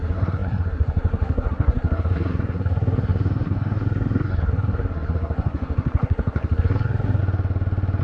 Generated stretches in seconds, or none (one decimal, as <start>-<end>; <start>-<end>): 0.0-7.2